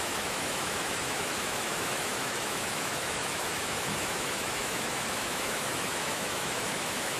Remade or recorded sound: remade